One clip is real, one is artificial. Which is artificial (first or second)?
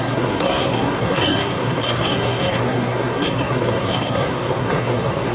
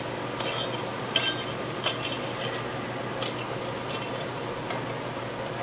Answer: first